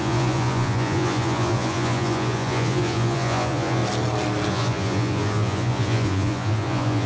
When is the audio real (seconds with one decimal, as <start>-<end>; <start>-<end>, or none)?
3.8-4.5